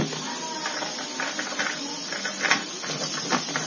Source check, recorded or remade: recorded